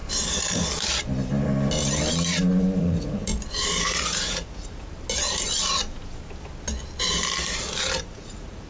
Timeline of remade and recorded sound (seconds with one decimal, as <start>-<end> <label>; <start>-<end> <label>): 0.0-2.8 recorded; 2.8-3.3 remade; 3.3-3.8 recorded; 3.8-4.9 remade; 4.9-8.0 recorded; 8.0-8.7 remade